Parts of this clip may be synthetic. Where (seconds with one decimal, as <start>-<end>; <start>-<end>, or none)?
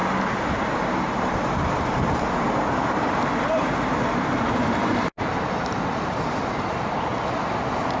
0.6-5.3; 6.1-7.1